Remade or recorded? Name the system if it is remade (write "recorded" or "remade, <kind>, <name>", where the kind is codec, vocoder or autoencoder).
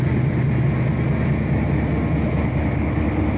recorded